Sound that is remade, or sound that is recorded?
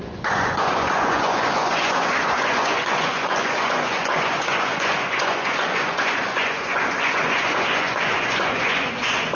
remade